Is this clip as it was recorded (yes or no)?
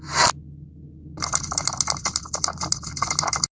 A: yes